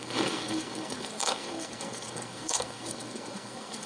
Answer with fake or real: fake